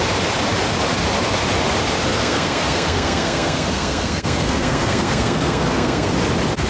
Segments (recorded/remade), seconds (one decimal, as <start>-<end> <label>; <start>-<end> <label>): 0.0-2.1 recorded; 2.1-6.1 remade; 6.1-6.7 recorded